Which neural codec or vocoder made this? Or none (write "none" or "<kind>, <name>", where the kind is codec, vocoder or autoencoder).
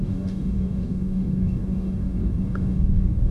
codec, DAC